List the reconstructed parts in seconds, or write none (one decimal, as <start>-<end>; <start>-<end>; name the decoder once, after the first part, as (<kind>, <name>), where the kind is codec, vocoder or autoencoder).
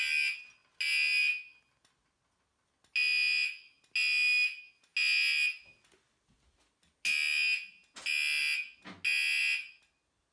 none